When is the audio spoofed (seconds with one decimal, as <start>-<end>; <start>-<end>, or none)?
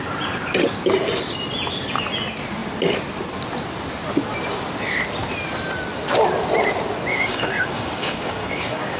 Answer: 7.1-9.0